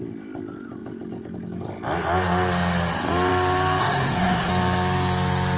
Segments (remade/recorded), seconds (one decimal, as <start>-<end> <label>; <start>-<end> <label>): 0.0-3.8 recorded; 3.8-4.5 remade; 4.5-5.6 recorded